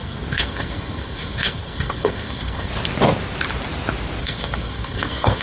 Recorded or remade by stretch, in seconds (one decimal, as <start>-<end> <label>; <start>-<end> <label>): 0.0-2.7 remade; 2.7-4.2 recorded; 4.2-5.4 remade